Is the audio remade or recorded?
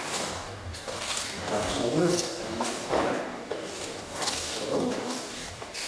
remade